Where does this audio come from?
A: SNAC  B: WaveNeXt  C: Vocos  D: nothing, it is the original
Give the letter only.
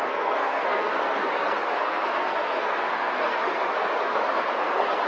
A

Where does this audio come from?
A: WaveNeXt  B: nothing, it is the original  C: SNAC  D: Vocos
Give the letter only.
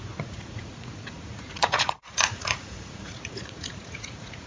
D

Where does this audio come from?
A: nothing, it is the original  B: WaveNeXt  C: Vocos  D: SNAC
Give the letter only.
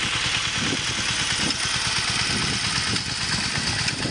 A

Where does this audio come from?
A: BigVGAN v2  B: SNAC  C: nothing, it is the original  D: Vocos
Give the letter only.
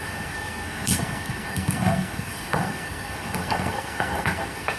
B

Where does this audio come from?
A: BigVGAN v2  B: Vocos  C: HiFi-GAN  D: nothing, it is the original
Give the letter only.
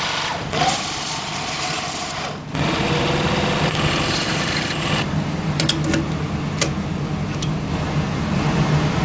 D